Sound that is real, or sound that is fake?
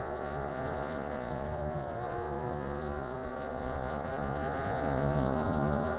fake